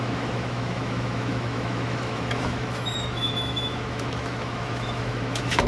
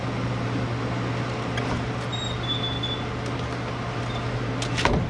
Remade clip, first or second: first